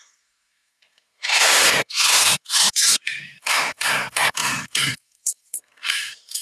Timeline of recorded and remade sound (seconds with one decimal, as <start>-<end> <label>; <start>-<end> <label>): 0.0-6.4 remade